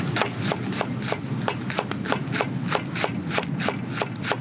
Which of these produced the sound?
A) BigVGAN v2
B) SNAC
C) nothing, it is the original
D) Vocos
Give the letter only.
C